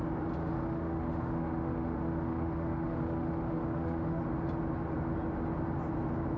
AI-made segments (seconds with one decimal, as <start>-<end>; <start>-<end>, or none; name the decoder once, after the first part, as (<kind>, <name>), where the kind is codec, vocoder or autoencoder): 0.4-4.2 (autoencoder, DAC-VAE)